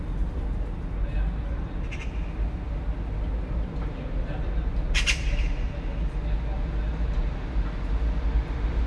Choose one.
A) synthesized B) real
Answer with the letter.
B